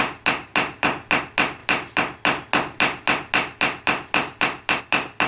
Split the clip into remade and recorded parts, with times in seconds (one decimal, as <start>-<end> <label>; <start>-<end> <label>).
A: 0.0-5.3 recorded